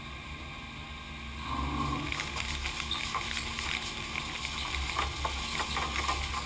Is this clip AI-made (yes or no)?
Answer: no